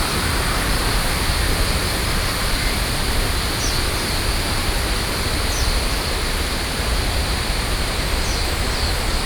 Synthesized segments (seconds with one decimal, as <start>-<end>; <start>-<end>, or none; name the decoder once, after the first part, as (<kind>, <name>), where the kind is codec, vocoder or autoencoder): 0.8-3.3 (vocoder, BigVGAN v2); 4.6-8.0; 8.4-9.3